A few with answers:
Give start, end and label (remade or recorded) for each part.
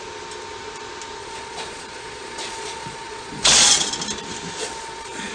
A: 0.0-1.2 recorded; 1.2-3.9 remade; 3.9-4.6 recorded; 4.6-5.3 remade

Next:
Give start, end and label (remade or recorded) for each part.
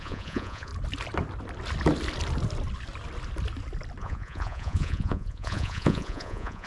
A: 0.0-0.7 remade; 0.7-4.0 recorded; 4.0-6.7 remade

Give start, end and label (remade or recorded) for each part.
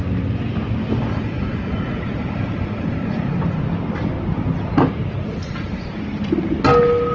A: 0.0-1.1 recorded; 1.1-3.6 remade; 3.6-5.4 recorded; 5.4-6.0 remade; 6.0-7.1 recorded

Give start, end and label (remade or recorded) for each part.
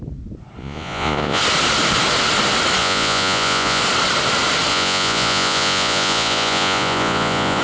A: 0.0-0.6 recorded; 0.6-1.4 remade; 1.4-2.8 recorded; 2.8-3.8 remade; 3.8-4.7 recorded; 4.7-7.6 remade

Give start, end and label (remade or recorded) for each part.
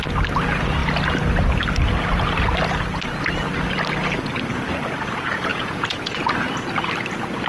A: 0.0-5.5 recorded; 5.5-6.4 remade; 6.4-7.5 recorded